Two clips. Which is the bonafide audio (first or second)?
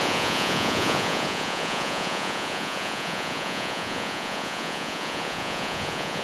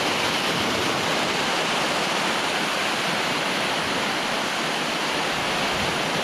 second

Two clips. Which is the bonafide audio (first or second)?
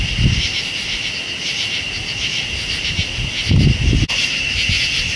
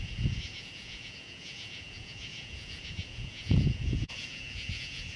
first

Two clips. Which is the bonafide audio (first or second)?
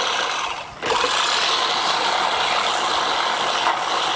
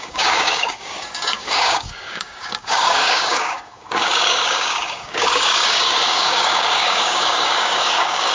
first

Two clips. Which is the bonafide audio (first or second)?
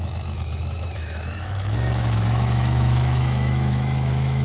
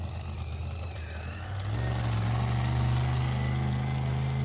second